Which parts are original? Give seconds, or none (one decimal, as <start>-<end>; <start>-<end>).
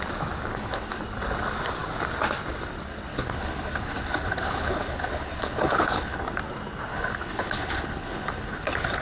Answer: 0.0-0.5; 1.0-3.1; 6.4-6.9